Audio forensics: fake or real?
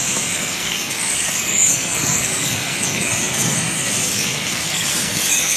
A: fake